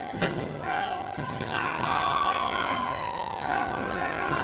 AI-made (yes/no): yes